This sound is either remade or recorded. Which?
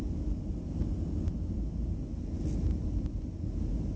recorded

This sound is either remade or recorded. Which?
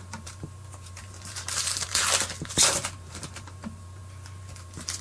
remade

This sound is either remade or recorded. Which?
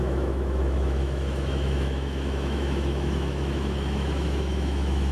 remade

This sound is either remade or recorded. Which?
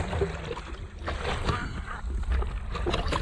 recorded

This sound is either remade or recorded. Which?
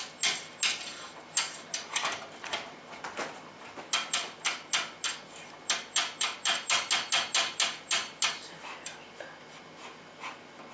recorded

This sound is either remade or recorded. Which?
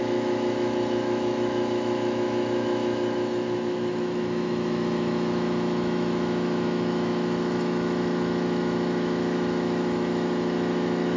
remade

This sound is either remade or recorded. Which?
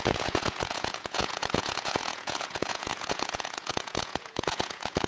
remade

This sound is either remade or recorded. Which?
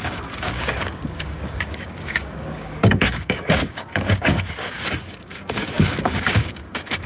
remade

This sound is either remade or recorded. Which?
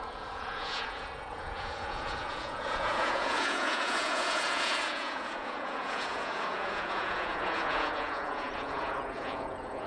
remade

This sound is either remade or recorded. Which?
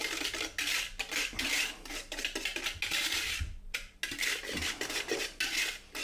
recorded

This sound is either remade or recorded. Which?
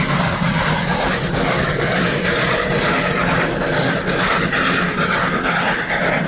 recorded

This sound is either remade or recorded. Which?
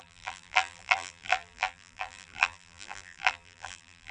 remade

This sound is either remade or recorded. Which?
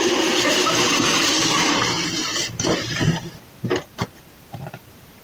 remade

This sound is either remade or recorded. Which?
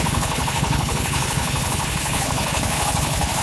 remade